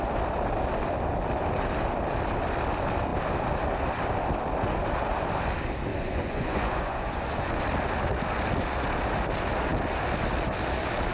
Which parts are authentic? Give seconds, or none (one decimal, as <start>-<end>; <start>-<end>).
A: 0.0-5.9; 7.6-11.1